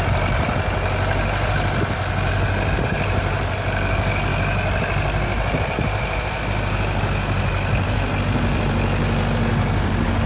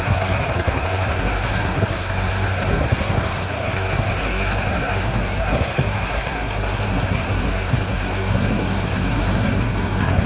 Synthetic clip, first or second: second